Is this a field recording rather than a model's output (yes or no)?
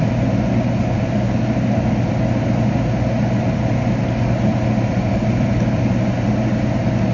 yes